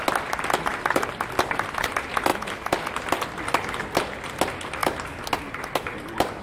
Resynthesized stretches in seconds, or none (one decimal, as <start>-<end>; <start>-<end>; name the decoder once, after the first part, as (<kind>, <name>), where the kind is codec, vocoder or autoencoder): none